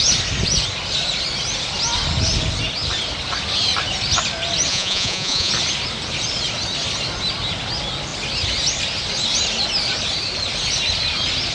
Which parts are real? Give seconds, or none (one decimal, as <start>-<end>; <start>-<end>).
0.0-4.7; 5.5-11.5